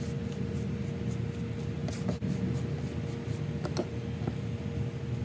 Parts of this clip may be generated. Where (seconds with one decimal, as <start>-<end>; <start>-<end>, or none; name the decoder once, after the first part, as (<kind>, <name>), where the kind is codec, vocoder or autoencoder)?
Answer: none